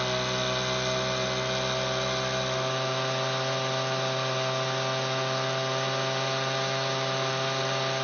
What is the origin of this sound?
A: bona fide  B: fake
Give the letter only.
A